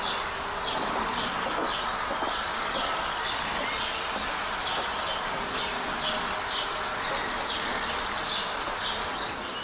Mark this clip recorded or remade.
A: recorded